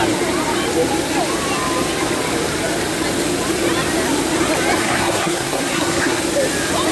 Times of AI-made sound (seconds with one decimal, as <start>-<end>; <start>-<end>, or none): 4.8-6.2